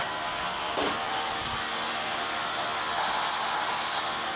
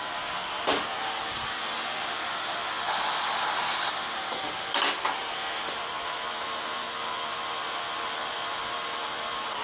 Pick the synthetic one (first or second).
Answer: second